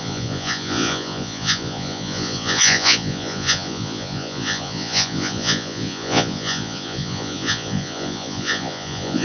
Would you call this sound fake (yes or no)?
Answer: yes